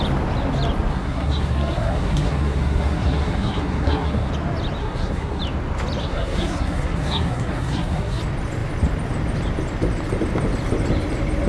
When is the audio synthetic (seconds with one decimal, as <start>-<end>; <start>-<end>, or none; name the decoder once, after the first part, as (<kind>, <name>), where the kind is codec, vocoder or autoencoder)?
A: 0.9-4.3 (codec, SNAC); 4.8-5.4; 6.0-8.2